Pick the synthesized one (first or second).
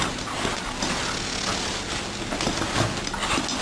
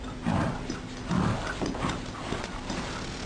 second